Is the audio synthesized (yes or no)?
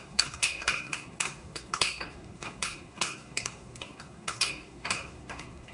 yes